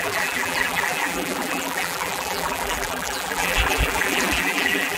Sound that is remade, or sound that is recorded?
remade